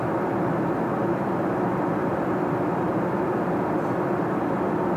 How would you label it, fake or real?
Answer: real